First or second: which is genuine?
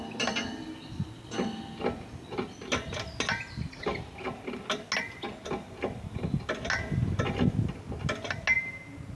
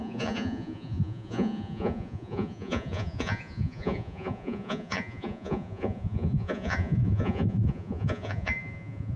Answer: first